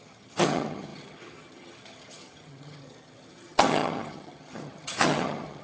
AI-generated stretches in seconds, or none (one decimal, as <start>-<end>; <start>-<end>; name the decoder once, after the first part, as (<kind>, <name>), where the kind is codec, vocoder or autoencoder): 0.0-5.6 (vocoder, HiFi-GAN)